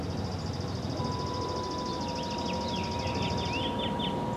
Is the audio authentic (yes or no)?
yes